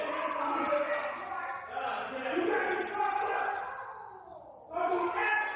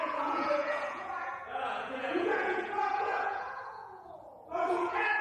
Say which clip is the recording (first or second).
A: first